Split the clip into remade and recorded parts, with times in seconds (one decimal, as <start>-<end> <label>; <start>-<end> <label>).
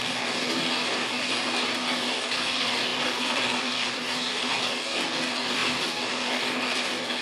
0.0-7.2 remade